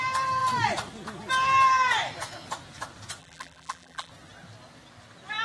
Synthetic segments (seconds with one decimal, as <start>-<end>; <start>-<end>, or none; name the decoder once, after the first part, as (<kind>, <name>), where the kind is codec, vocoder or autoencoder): 3.2-4.1 (vocoder, BigVGAN v2)